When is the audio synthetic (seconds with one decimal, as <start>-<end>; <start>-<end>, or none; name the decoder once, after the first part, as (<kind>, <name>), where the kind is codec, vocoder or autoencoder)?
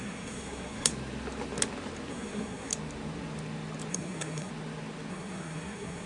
0.0-0.9 (codec, SNAC); 2.1-2.7; 3.9-4.5; 5.1-6.1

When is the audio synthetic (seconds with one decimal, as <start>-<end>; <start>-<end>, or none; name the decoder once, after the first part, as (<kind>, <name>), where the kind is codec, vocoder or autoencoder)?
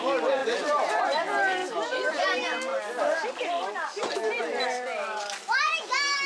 none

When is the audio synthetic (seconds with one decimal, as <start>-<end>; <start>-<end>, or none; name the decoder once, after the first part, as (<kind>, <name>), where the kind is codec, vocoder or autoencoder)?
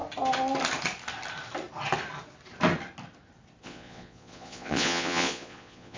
3.6-6.0 (vocoder, Vocos)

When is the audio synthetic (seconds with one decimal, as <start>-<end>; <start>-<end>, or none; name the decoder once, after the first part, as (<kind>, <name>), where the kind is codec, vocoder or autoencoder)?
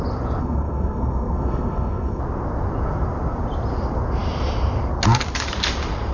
0.4-2.2 (codec, SNAC)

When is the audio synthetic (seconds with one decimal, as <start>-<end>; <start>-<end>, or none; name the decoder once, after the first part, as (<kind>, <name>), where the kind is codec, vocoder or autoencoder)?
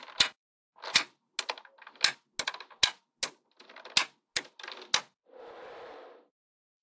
0.0-1.3 (vocoder, BigVGAN v2); 5.4-6.8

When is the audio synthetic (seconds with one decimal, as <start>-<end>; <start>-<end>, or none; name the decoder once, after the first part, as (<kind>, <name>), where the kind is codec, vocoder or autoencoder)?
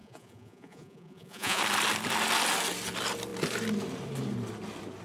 0.0-1.6 (vocoder, Vocos)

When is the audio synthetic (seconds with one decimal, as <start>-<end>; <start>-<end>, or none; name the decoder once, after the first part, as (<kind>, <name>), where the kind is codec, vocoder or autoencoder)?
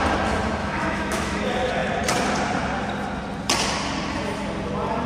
0.6-1.4 (autoencoder, DAC-VAE)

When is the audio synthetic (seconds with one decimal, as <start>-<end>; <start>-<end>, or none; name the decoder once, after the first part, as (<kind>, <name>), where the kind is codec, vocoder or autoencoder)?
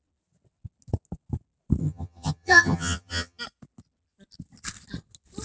1.8-3.4 (vocoder, HiFi-GAN)